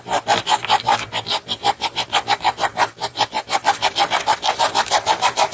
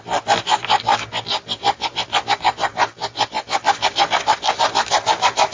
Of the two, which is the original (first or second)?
second